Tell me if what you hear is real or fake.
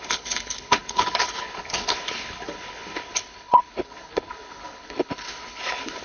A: fake